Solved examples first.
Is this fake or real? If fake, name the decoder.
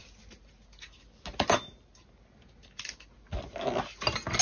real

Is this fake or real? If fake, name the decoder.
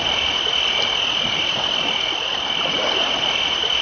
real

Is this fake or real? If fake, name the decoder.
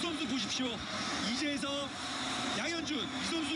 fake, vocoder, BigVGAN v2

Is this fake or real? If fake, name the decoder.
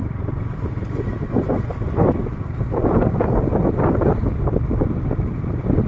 fake, vocoder, BigVGAN v2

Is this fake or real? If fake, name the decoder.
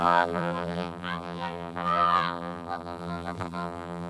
fake, vocoder, BigVGAN v2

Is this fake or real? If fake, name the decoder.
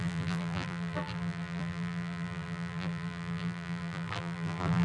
fake, vocoder, BigVGAN v2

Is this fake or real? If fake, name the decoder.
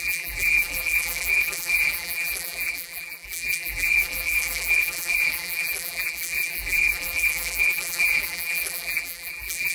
fake, vocoder, BigVGAN v2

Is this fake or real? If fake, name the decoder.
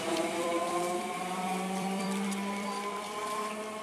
fake, vocoder, BigVGAN v2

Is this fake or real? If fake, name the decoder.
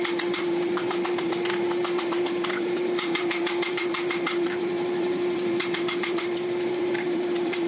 fake, vocoder, BigVGAN v2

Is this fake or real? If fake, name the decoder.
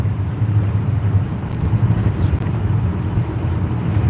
fake, vocoder, BigVGAN v2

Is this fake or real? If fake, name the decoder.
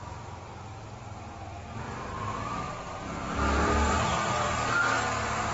real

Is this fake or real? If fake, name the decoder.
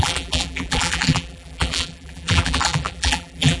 fake, vocoder, BigVGAN v2